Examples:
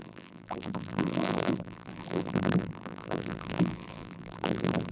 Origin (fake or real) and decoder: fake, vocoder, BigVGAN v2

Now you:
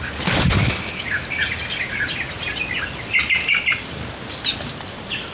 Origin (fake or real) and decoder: real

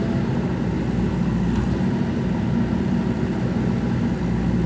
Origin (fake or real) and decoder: real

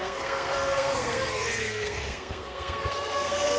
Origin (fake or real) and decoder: fake, codec, SNAC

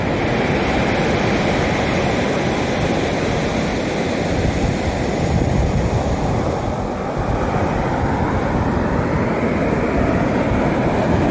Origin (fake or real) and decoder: real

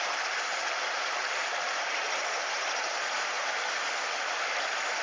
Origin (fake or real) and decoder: real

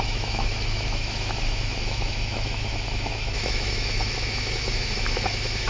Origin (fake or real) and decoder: fake, autoencoder, DAC-VAE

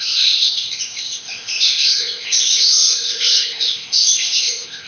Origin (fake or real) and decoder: fake, codec, ZipCodec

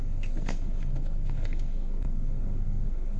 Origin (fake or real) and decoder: fake, codec, SNAC